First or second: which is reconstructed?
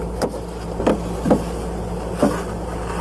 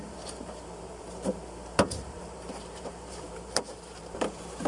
second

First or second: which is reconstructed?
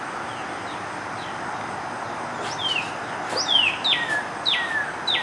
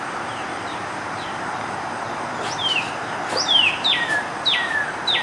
second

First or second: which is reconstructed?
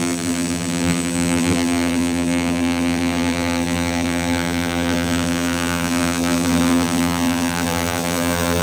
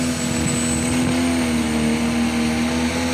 first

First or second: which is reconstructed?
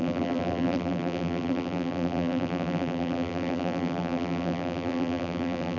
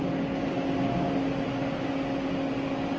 first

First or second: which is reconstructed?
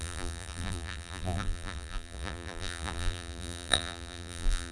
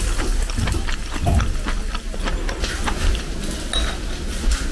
first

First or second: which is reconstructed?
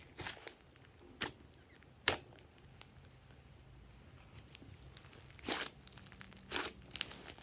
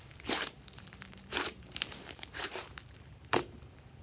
second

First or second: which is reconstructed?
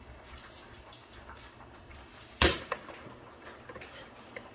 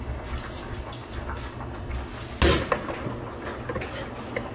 first